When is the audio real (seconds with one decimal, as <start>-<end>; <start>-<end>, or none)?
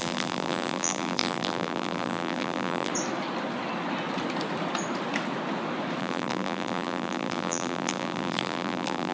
2.9-6.0